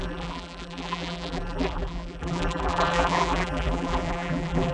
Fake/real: fake